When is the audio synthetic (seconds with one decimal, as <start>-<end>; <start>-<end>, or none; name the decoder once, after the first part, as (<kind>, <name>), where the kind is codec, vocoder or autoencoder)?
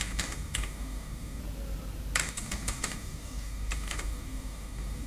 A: 0.0-1.4 (codec, DAC); 2.2-5.1